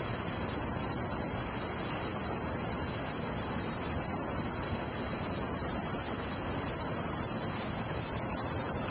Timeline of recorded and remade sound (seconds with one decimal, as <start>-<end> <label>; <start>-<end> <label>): 0.0-8.9 recorded